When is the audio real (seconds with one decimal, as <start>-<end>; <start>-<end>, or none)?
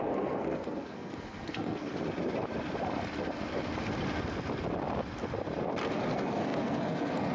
1.9-6.1